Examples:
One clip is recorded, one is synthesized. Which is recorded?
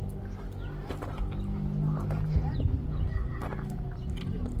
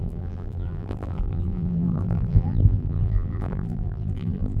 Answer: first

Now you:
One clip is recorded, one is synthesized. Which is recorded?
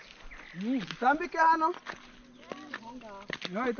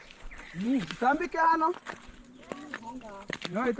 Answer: first